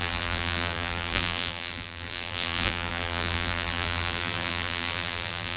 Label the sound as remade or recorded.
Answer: remade